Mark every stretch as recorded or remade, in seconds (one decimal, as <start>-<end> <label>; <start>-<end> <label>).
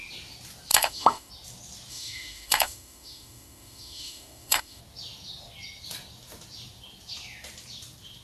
0.0-0.7 recorded; 0.7-1.3 remade; 1.3-1.9 recorded; 1.9-4.8 remade; 4.8-8.2 recorded